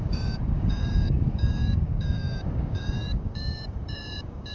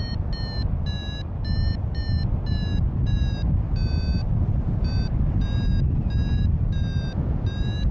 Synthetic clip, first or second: first